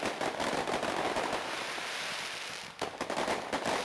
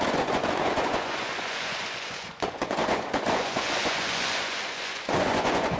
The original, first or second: first